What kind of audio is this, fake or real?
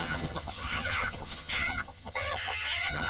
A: fake